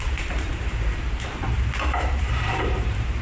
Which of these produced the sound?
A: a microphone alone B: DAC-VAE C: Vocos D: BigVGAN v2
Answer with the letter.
D